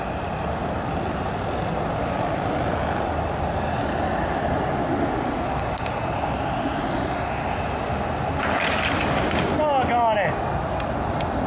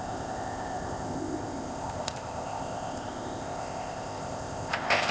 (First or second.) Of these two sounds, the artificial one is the second